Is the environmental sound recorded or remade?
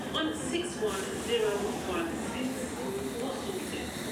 recorded